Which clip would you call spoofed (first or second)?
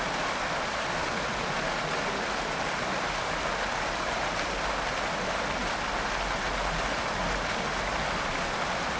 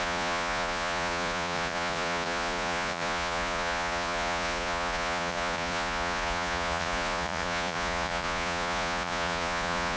second